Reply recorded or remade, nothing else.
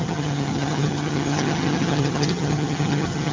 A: remade